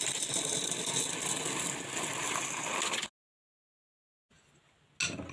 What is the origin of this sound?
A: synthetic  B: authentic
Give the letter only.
B